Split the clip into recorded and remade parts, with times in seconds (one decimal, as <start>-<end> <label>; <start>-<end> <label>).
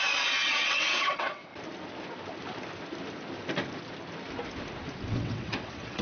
0.0-1.5 remade; 1.5-5.1 recorded; 5.1-6.0 remade